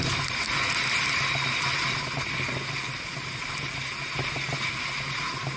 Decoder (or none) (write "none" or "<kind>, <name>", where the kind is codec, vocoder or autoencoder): none